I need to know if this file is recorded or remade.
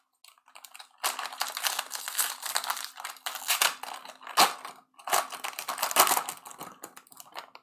recorded